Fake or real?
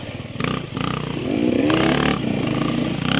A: real